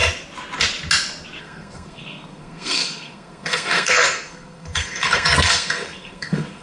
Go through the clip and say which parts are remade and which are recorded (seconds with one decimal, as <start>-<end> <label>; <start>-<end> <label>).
0.0-1.4 recorded; 1.4-6.6 remade